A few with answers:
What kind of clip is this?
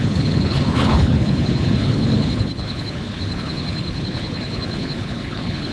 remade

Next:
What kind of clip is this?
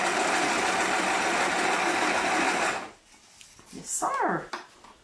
recorded